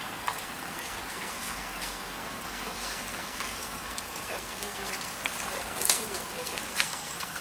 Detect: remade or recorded remade